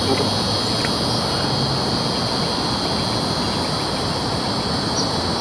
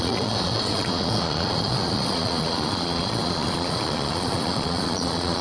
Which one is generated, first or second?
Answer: second